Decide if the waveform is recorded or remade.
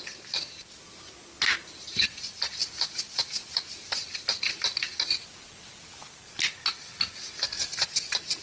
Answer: recorded